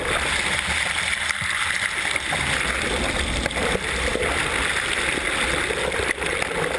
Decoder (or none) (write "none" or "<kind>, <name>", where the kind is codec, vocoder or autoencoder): none